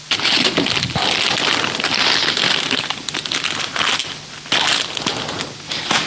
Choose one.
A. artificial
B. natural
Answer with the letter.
B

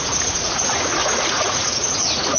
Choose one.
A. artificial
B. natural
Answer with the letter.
A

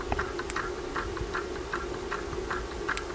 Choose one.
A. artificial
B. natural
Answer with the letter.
B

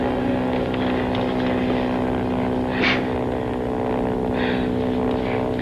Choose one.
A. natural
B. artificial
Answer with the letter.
A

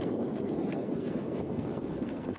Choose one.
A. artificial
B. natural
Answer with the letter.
A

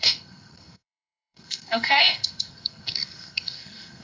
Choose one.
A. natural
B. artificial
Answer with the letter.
B